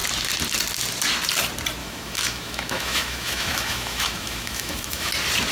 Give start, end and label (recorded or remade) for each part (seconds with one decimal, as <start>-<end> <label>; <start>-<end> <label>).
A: 0.0-1.8 recorded; 1.8-5.1 remade; 5.1-5.5 recorded